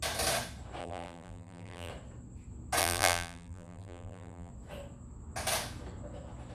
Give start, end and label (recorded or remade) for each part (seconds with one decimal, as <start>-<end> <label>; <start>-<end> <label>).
0.0-0.8 recorded; 0.8-1.9 remade; 1.9-2.8 recorded; 2.8-4.5 remade; 4.5-6.5 recorded